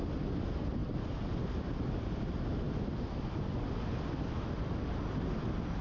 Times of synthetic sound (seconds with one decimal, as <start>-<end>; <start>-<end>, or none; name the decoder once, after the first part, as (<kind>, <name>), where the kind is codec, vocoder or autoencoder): none